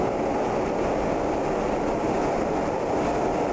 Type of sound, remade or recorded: recorded